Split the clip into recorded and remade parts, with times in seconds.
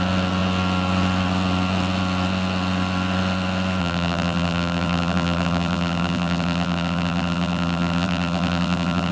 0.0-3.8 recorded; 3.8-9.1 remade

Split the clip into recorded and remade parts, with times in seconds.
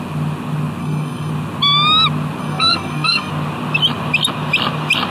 0.0-0.8 recorded; 0.8-1.3 remade; 1.3-2.4 recorded; 2.4-3.3 remade; 3.3-5.1 recorded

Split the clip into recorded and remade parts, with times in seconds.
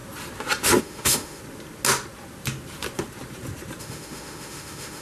0.0-0.8 recorded; 0.8-1.4 remade; 1.4-3.8 recorded; 3.8-5.0 remade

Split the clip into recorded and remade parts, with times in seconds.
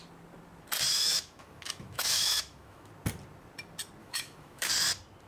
0.0-0.9 recorded; 0.9-2.9 remade; 2.9-4.0 recorded; 4.0-4.7 remade; 4.7-5.3 recorded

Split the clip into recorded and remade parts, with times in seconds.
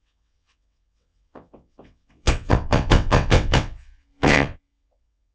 0.0-5.3 remade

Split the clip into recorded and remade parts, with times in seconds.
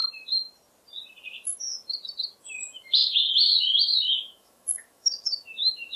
0.0-2.4 recorded; 2.4-6.0 remade